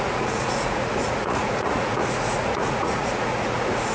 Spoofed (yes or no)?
yes